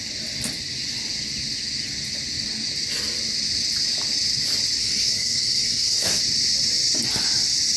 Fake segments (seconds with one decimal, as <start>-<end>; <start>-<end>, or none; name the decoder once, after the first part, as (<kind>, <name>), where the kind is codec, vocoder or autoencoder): 4.8-6.2 (codec, SNAC)

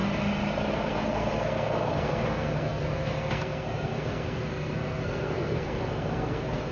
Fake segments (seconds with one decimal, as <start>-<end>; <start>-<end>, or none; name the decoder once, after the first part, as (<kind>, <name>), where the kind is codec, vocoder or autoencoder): 0.7-6.7 (codec, SNAC)

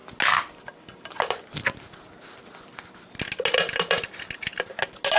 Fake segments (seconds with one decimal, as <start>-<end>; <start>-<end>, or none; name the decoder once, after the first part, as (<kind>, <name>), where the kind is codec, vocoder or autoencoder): none

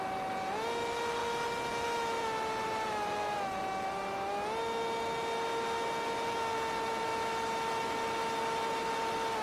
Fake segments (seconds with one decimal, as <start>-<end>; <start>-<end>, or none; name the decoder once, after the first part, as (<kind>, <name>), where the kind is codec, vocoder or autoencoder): none

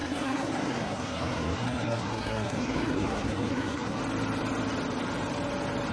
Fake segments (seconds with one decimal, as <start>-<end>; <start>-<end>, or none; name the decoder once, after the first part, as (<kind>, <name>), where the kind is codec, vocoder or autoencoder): 0.0-4.0 (codec, SNAC)

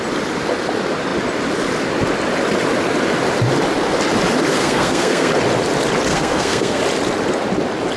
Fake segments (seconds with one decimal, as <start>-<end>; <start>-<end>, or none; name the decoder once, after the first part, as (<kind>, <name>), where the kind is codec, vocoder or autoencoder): 4.5-5.3 (codec, SNAC); 6.1-6.8

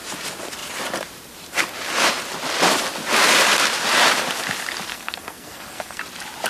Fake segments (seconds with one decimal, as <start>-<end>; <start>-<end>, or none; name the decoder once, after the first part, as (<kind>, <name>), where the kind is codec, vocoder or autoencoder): 4.9-6.0 (codec, SNAC)